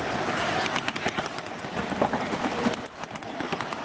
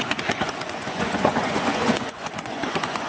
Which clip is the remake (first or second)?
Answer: second